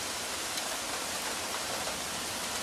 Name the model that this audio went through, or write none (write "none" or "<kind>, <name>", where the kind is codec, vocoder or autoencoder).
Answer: none